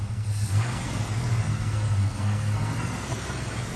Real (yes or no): no